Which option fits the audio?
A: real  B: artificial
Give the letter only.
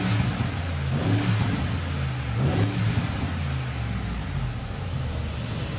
A